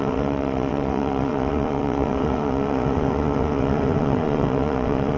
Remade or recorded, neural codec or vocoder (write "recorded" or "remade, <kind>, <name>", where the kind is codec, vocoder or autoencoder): remade, vocoder, WaveNeXt